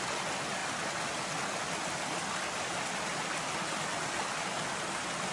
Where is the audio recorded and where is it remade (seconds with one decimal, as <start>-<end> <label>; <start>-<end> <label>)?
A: 0.0-5.3 recorded